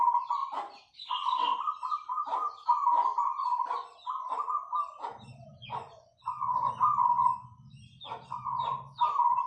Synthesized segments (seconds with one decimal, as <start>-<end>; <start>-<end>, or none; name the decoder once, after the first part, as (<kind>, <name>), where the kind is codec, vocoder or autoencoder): 5.5-8.1 (vocoder, Vocos)